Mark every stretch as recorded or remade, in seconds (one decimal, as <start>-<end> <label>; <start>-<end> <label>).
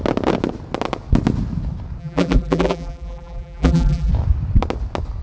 0.0-2.0 recorded; 2.0-4.1 remade; 4.1-5.2 recorded